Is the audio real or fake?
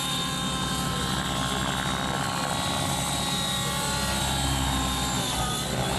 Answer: real